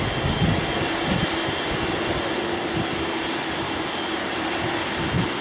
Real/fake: real